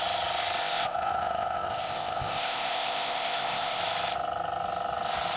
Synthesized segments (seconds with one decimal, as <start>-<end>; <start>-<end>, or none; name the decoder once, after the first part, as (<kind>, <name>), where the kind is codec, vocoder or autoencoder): 0.6-3.8 (codec, ZipCodec)